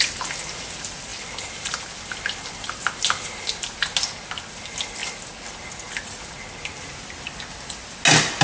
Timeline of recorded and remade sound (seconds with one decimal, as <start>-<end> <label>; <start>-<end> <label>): 0.0-8.4 recorded